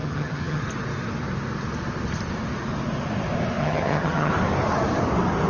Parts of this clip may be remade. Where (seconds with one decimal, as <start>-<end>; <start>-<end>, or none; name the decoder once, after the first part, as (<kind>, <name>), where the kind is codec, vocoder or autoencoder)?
0.0-0.6 (vocoder, HiFi-GAN); 3.6-4.3